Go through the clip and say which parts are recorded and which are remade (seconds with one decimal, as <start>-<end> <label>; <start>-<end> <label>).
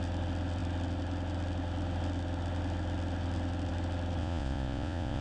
0.0-4.2 recorded; 4.2-5.2 remade